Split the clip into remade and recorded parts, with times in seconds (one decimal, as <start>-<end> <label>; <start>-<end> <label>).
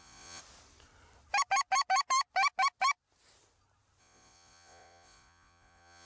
0.0-0.4 remade; 0.4-4.0 recorded; 4.0-6.0 remade